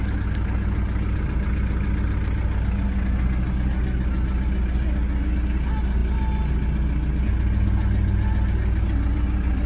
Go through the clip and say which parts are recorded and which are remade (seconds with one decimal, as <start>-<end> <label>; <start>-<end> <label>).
0.0-9.7 recorded